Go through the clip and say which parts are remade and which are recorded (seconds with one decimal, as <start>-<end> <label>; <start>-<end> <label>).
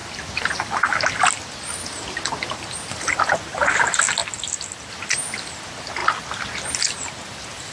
0.0-7.7 recorded